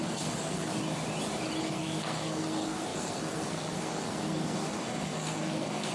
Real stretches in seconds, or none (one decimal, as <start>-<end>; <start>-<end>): 0.7-1.6